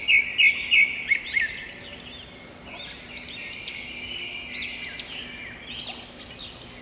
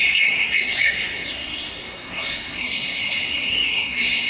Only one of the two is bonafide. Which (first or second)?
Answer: first